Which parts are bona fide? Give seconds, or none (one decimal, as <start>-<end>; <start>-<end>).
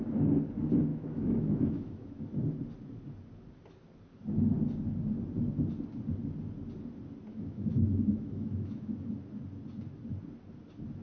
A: 0.0-0.9; 2.2-7.3; 9.1-11.0